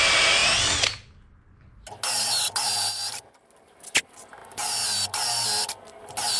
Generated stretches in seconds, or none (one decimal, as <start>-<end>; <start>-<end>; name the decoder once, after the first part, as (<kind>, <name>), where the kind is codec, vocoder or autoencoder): 3.1-3.8 (vocoder, BigVGAN v2)